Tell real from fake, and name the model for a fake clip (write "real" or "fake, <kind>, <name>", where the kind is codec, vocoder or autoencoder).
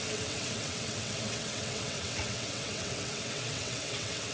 fake, vocoder, WaveNeXt